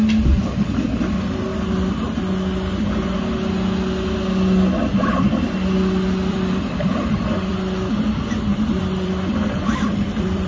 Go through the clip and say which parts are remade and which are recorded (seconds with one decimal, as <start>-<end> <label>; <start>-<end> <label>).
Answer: 0.0-1.1 recorded; 1.1-1.5 remade; 1.5-6.3 recorded; 6.3-7.5 remade; 7.5-8.0 recorded; 8.0-10.5 remade